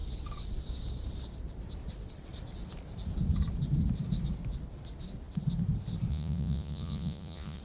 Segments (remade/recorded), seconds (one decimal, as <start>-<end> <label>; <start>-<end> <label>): 0.0-6.1 recorded; 6.1-7.6 remade